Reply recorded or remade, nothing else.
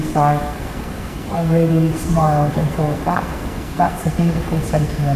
remade